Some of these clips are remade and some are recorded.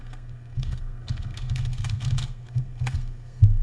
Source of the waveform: remade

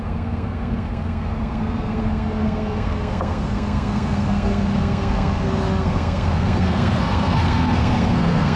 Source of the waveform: remade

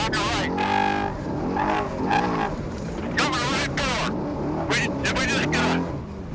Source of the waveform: recorded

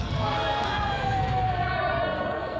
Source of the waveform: remade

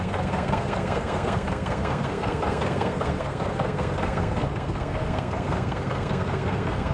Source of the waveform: remade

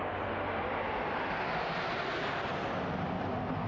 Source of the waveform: recorded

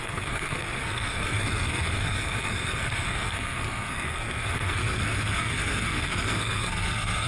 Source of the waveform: remade